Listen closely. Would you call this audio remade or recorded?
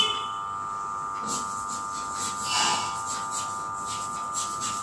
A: recorded